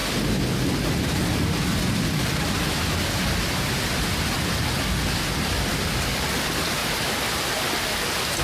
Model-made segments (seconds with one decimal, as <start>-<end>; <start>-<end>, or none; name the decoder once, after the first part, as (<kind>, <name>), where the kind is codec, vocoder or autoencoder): none